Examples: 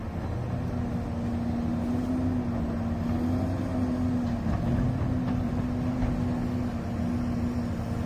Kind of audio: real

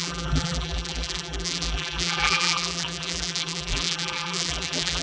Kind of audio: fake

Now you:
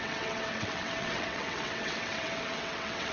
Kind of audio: fake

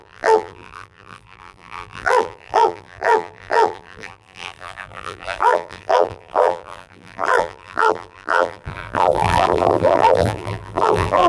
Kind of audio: fake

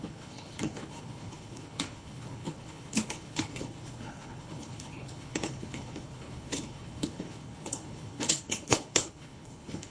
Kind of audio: fake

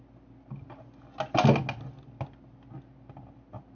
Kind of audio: real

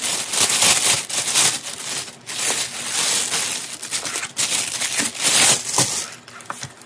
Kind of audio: real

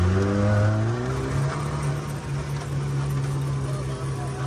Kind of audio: real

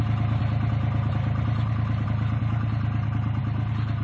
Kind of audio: real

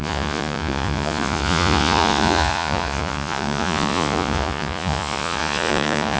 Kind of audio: fake